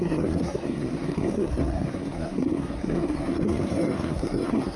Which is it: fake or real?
fake